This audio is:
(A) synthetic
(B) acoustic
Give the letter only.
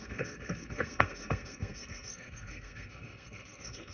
A